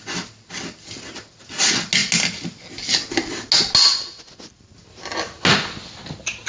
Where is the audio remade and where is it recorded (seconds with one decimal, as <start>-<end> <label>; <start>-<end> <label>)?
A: 0.0-6.5 recorded